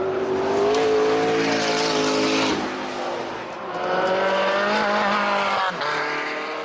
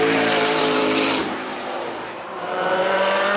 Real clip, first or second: first